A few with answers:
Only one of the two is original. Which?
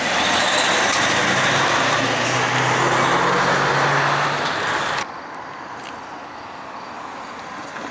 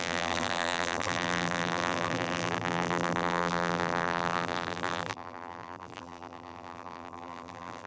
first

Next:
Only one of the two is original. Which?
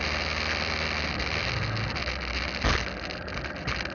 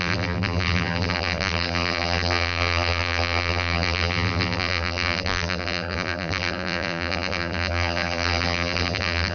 first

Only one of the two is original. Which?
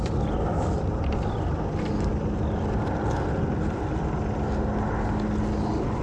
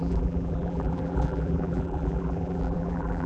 first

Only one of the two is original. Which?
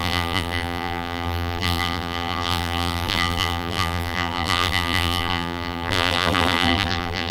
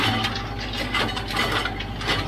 second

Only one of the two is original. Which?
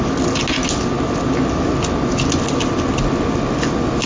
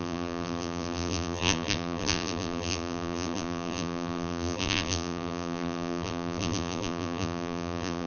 first